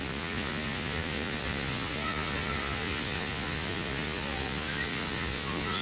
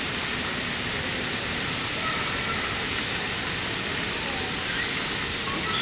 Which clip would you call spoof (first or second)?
first